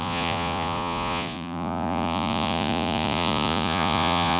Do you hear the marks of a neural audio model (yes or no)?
yes